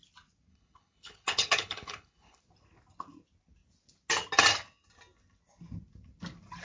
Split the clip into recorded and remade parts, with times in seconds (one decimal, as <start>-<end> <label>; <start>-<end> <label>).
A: 0.0-0.5 recorded; 0.5-2.4 remade; 2.4-6.6 recorded